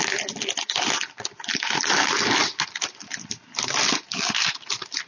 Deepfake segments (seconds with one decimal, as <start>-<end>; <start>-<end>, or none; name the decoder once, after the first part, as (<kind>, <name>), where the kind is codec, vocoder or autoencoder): none